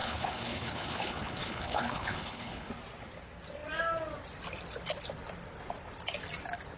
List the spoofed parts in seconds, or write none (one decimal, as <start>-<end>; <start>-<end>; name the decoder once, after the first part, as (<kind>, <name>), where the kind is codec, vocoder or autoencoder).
0.0-2.7 (codec, HILCodec)